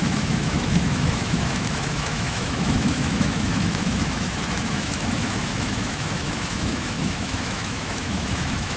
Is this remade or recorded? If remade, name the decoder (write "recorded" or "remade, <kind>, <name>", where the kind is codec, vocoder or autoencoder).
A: remade, autoencoder, DAC-VAE